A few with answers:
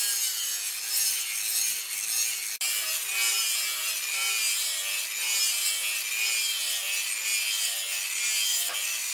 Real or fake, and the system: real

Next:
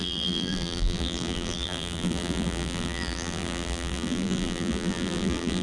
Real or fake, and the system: fake, vocoder, BigVGAN v2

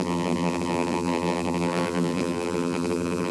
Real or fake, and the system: fake, vocoder, BigVGAN v2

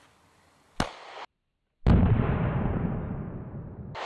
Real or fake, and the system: real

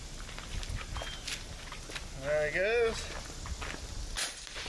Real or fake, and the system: real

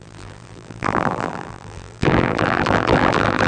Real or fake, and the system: fake, vocoder, BigVGAN v2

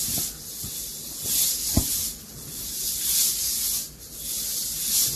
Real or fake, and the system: real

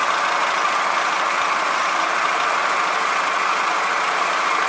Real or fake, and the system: real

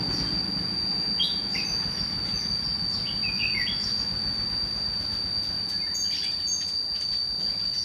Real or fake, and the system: real